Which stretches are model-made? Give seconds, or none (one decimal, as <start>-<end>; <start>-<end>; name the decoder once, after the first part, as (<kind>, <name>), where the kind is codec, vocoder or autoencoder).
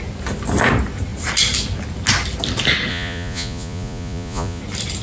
2.9-4.6 (vocoder, Vocos)